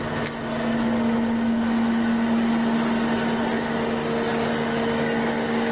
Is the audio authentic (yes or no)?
yes